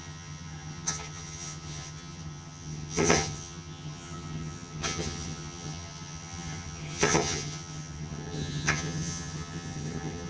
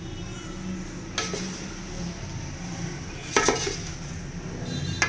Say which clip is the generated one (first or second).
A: first